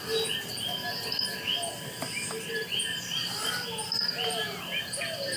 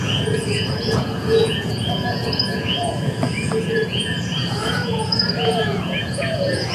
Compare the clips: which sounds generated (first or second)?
second